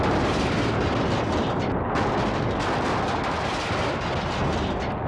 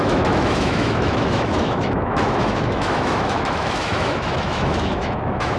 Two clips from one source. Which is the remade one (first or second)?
second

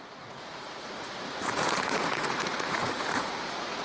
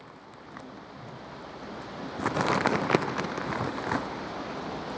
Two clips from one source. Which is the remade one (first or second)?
first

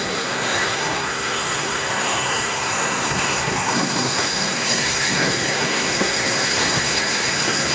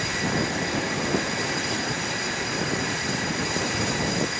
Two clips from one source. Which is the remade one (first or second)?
first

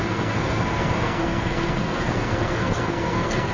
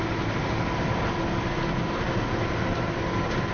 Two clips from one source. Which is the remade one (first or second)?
first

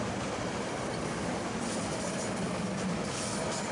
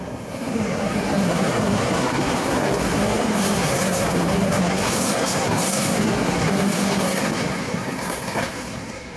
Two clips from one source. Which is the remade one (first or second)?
second